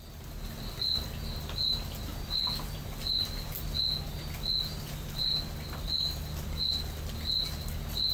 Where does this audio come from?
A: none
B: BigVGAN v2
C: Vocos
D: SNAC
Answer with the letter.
A